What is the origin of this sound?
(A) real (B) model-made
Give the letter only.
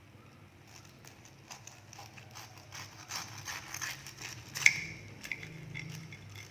B